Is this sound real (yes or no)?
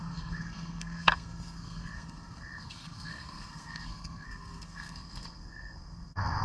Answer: no